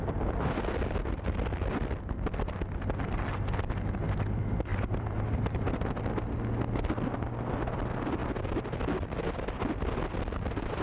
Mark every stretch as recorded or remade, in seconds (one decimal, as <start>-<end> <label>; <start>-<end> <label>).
0.0-4.7 recorded; 4.7-5.9 remade; 5.9-8.2 recorded; 8.2-8.9 remade; 8.9-10.8 recorded